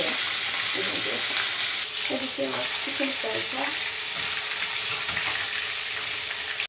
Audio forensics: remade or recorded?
recorded